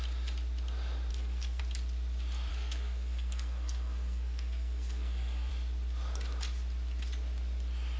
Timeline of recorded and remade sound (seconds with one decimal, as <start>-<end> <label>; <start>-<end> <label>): 0.0-1.1 recorded; 1.1-1.6 remade; 1.6-2.5 recorded; 2.5-5.5 remade; 5.5-8.0 recorded